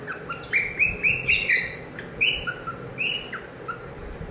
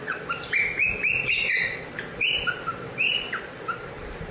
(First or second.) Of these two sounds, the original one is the first